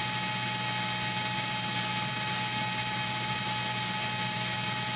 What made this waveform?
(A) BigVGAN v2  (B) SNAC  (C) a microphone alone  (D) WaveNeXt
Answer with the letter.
C